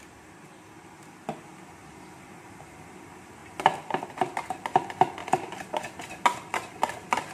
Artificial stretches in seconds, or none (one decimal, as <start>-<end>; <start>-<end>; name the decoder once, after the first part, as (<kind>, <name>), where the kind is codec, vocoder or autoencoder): 1.5-3.0 (vocoder, BigVGAN v2); 3.4-4.0; 5.2-5.9